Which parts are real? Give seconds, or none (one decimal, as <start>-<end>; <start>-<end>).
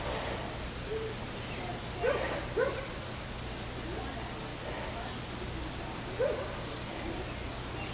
0.0-7.9